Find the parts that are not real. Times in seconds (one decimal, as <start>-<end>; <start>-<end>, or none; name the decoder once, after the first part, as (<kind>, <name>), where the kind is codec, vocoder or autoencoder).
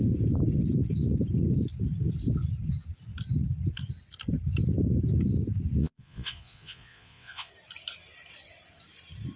5.8-7.5 (vocoder, Vocos)